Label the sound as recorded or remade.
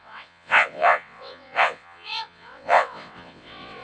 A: remade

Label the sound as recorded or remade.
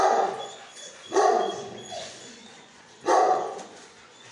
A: remade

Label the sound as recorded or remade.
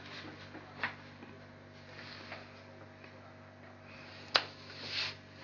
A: recorded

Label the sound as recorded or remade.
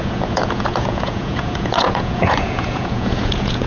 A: remade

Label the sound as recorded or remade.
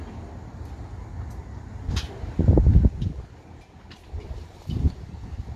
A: recorded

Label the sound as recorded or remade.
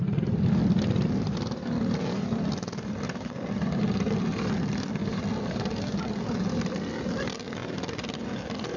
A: recorded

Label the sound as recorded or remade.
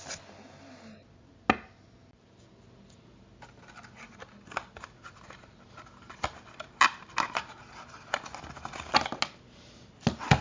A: recorded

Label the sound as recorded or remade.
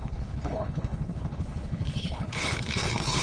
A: remade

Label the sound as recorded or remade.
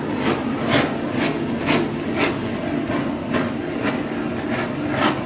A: recorded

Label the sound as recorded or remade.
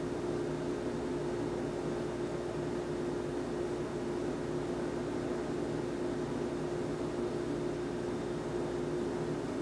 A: recorded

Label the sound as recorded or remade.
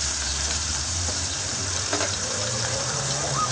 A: remade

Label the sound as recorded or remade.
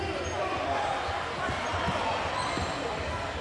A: recorded